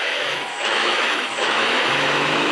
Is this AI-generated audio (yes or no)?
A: yes